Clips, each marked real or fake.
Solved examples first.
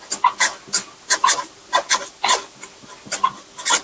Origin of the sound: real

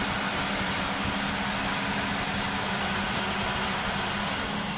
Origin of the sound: real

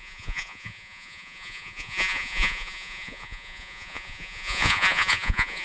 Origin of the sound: fake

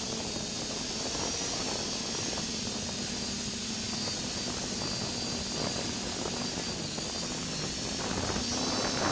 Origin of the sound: real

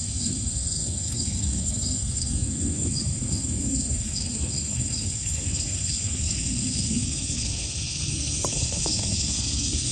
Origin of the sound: fake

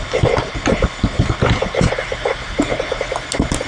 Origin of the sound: real